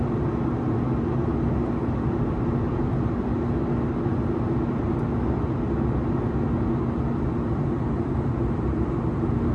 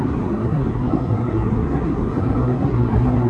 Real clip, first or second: first